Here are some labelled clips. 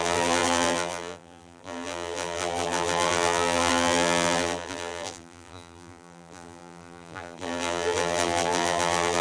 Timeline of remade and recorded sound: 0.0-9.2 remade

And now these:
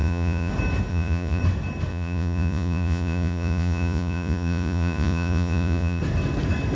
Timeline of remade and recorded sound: 0.0-0.5 remade; 0.5-0.9 recorded; 0.9-1.4 remade; 1.4-1.9 recorded; 1.9-6.0 remade; 6.0-6.8 recorded

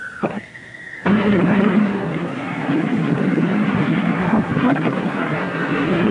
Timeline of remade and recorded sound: 0.0-6.1 remade

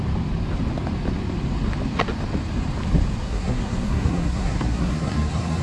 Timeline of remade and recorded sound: 0.0-3.2 recorded; 3.2-5.6 remade

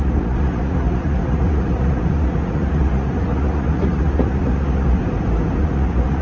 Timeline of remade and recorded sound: 0.0-5.0 remade; 5.0-5.6 recorded; 5.6-6.2 remade

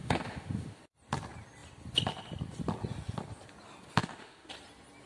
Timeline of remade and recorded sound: 0.0-0.8 remade; 0.8-4.0 recorded; 4.0-4.5 remade; 4.5-5.1 recorded

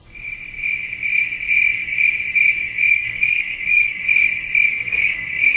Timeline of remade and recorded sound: 0.0-2.9 recorded; 2.9-4.0 remade; 4.0-4.7 recorded; 4.7-5.6 remade

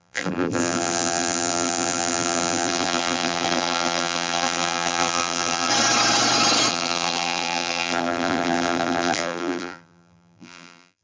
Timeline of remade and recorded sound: 0.0-5.7 remade; 5.7-6.7 recorded; 6.7-11.0 remade